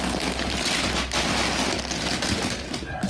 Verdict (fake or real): real